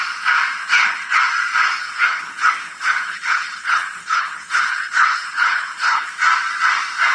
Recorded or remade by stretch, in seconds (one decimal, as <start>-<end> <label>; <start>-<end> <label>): 0.0-0.6 recorded; 0.6-1.2 remade; 1.2-1.8 recorded; 1.8-6.1 remade; 6.1-7.1 recorded